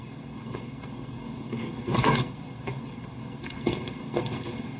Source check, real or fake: fake